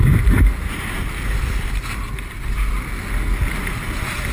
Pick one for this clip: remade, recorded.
recorded